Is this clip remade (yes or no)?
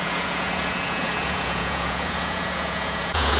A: yes